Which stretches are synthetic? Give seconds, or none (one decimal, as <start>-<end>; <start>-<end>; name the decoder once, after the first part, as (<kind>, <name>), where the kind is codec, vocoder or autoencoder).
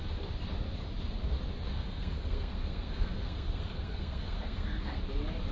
1.7-5.0 (codec, SNAC)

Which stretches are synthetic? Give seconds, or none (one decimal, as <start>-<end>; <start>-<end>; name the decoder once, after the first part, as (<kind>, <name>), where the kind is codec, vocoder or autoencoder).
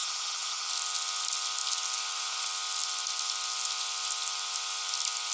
0.0-0.7 (vocoder, HiFi-GAN)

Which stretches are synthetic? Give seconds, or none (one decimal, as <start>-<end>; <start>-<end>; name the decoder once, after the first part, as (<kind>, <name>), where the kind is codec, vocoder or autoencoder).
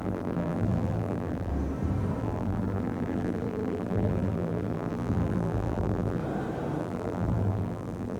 0.0-1.5 (vocoder, BigVGAN v2); 2.2-6.2; 6.8-8.2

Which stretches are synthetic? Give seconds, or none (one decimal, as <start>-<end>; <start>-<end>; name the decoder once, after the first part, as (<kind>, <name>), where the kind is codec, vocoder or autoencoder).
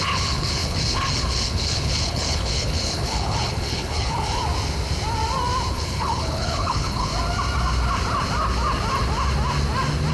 0.0-4.4 (codec, HILCodec); 5.7-7.1